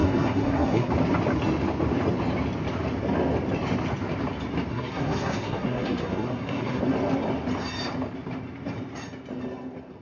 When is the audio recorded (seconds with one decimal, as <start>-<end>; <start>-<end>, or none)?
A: 0.9-4.7; 6.8-10.0